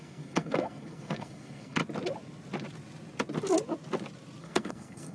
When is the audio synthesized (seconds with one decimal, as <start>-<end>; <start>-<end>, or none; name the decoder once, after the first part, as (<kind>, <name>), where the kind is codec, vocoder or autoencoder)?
0.0-1.8 (codec, SNAC); 4.4-5.1